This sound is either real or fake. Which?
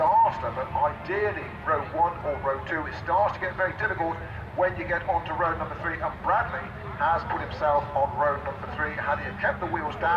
real